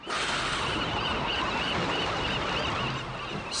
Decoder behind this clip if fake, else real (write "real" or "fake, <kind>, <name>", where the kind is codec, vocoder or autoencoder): real